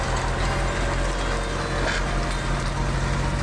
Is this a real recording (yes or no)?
yes